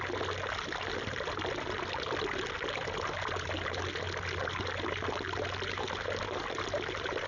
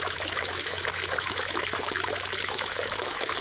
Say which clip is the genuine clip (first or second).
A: first